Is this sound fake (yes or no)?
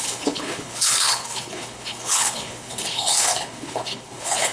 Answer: yes